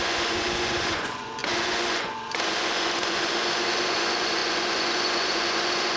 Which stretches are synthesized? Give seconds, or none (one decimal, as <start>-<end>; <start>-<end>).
0.0-6.0